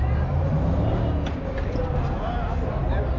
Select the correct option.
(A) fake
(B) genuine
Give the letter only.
B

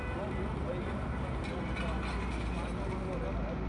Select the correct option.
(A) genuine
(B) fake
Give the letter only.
A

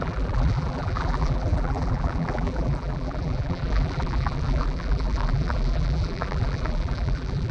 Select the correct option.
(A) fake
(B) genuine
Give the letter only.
A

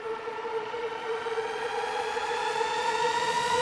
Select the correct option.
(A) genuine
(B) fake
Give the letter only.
B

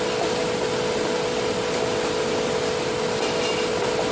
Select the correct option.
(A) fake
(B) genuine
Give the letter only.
B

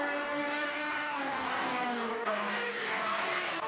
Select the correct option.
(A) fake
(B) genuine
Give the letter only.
A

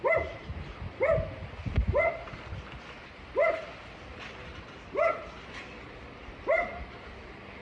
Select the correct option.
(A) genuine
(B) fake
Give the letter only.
A